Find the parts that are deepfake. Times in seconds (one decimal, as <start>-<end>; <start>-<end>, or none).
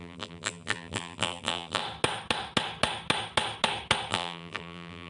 0.0-1.8; 4.1-5.1